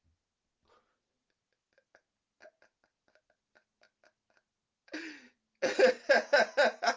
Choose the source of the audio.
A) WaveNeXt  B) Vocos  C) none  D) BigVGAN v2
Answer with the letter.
C